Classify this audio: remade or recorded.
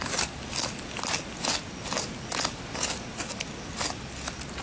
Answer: recorded